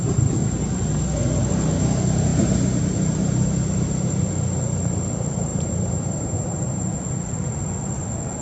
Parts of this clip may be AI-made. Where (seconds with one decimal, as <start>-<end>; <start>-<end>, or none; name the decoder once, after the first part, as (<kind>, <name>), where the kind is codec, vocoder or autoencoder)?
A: 5.5-6.9 (vocoder, BigVGAN v2)